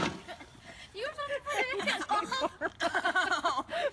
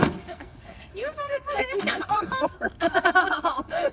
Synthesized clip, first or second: second